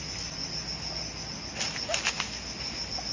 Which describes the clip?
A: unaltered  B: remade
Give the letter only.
A